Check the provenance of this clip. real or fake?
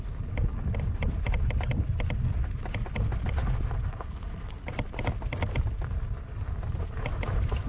real